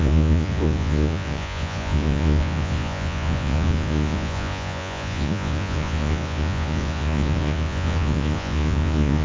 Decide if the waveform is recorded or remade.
remade